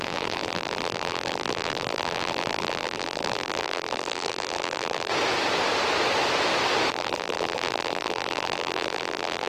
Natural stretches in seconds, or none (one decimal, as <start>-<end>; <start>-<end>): 5.1-6.9